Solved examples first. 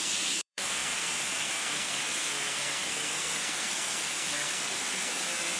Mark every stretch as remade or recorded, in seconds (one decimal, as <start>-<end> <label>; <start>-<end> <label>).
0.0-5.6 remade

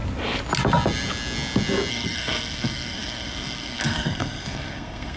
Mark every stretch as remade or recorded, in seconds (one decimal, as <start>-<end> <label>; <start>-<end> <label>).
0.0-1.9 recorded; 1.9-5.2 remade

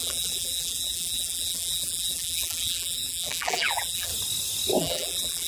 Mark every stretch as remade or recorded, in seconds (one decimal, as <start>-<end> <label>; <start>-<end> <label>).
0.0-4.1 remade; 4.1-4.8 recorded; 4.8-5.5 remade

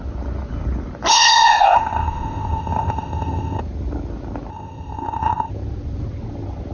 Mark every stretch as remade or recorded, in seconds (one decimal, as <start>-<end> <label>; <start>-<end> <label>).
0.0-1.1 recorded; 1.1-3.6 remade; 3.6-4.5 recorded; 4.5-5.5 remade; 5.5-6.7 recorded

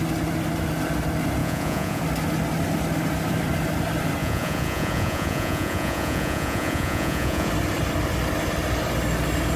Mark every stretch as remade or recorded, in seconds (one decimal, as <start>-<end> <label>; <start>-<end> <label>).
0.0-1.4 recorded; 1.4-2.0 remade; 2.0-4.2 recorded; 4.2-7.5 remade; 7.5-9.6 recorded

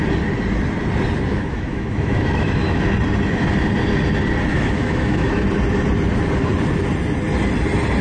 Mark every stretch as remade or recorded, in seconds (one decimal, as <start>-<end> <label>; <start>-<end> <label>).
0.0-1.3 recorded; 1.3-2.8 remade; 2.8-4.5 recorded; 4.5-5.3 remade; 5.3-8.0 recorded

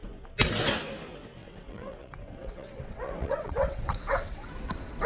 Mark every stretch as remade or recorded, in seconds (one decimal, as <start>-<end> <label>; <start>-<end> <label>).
0.0-1.4 recorded; 1.4-4.5 remade; 4.5-5.1 recorded

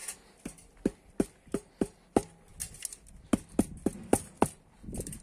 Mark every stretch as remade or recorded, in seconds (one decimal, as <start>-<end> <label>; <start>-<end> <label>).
0.0-5.2 recorded